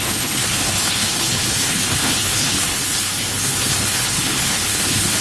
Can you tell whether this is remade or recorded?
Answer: remade